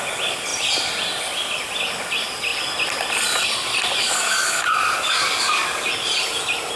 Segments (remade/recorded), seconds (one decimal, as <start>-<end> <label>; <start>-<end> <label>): 0.0-4.0 recorded; 4.0-5.9 remade; 5.9-6.8 recorded